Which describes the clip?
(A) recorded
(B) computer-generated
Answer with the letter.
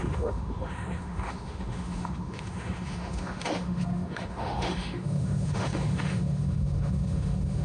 B